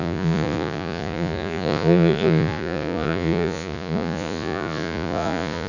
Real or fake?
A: fake